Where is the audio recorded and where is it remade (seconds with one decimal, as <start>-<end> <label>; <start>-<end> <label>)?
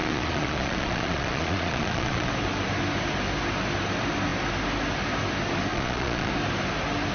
0.0-2.3 remade; 2.3-5.7 recorded; 5.7-6.3 remade; 6.3-7.1 recorded